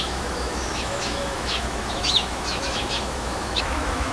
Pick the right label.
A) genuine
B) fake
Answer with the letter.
B